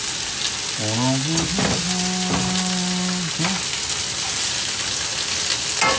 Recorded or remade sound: recorded